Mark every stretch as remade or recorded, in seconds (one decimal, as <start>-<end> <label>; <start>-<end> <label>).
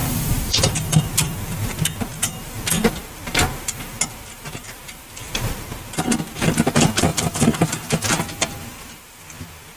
0.0-1.0 remade; 1.0-9.8 recorded